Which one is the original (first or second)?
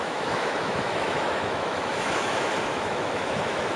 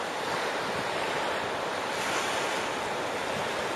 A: second